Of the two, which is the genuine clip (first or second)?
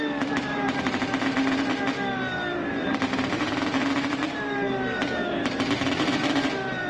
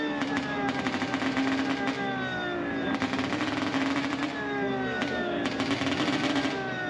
second